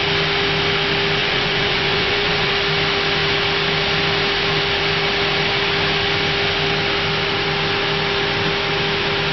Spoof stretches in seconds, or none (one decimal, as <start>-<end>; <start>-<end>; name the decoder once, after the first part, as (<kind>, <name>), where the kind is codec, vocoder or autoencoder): 1.2-2.5 (vocoder, Vocos)

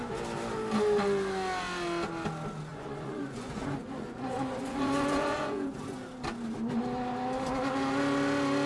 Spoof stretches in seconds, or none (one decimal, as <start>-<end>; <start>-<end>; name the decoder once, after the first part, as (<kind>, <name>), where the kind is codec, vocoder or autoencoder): 2.7-6.0 (vocoder, Vocos)

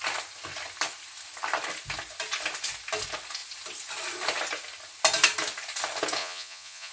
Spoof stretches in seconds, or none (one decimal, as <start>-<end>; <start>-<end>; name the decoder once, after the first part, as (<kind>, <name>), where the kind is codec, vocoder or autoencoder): 6.2-6.9 (vocoder, Vocos)

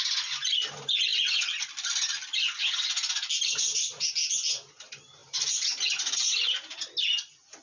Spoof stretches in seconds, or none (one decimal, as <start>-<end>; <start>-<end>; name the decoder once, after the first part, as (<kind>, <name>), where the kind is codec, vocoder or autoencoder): none